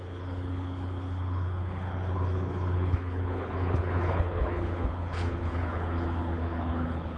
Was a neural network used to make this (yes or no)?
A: yes